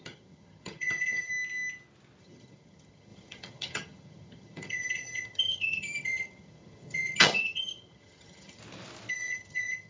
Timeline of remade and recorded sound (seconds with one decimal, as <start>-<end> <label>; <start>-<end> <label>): 0.0-1.3 remade; 1.3-2.2 recorded; 2.2-8.6 remade; 8.6-9.1 recorded; 9.1-9.9 remade